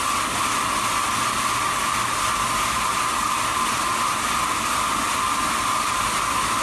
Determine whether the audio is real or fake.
real